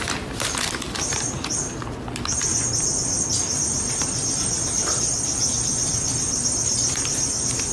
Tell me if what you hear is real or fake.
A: real